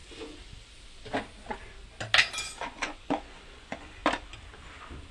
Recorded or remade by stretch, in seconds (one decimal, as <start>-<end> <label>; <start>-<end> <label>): 0.0-2.4 recorded; 2.4-4.0 remade; 4.0-5.1 recorded